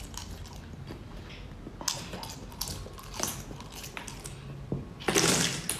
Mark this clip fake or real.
real